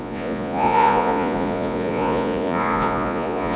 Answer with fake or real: fake